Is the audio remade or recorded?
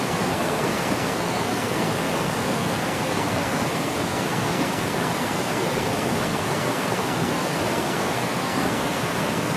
remade